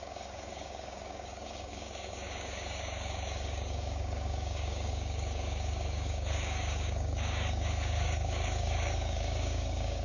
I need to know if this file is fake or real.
fake